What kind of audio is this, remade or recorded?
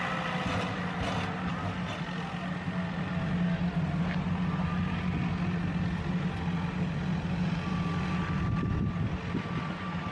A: recorded